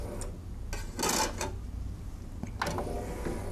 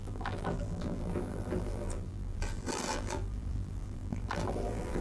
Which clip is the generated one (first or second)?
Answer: second